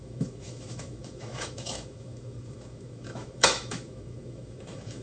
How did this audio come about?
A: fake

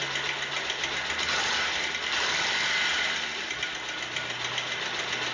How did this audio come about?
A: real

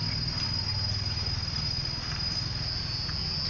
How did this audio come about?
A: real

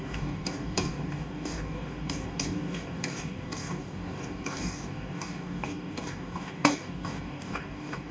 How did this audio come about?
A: fake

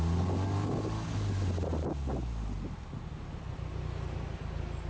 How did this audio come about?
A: real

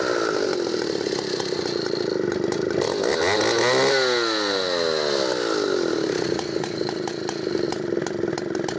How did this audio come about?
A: real